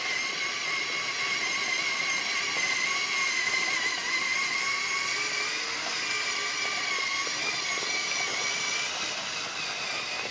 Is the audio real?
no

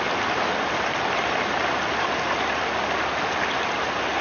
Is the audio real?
yes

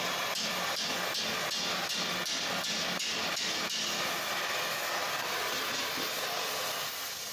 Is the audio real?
yes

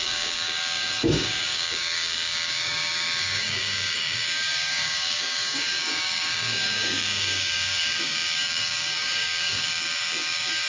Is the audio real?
no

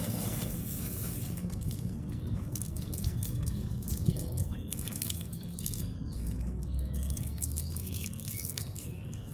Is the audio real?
no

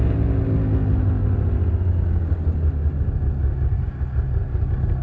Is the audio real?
yes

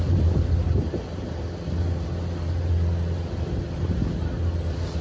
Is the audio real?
yes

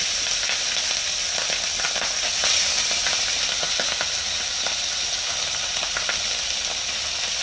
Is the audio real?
yes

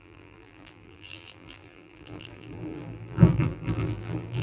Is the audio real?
no